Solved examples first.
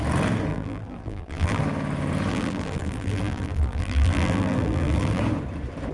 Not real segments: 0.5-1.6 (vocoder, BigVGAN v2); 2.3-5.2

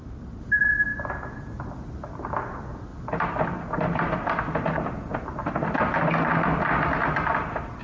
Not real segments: none

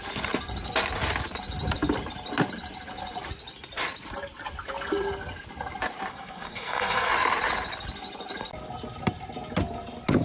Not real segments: 6.1-7.1 (codec, SNAC)

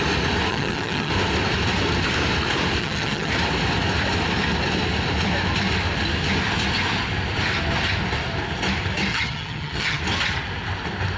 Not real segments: 0.5-1.1 (vocoder, HiFi-GAN); 2.8-3.3; 9.1-10.0

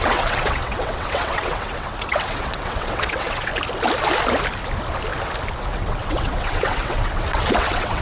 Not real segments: 0.0-3.5 (vocoder, WaveNeXt); 5.6-8.0

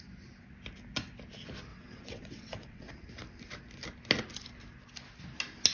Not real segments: 1.7-2.9 (vocoder, WaveNeXt)

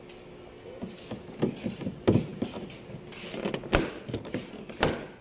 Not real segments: none